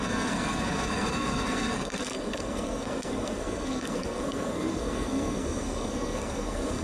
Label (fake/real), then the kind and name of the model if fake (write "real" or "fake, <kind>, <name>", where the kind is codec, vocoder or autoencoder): fake, codec, SNAC